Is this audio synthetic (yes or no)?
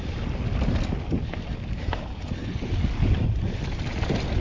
no